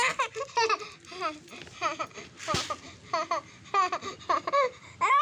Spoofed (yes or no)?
no